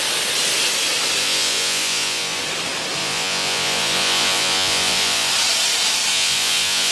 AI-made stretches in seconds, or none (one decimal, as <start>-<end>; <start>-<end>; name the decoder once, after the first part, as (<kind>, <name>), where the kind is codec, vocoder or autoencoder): 1.2-2.4 (vocoder, Vocos); 3.0-5.3; 6.1-6.9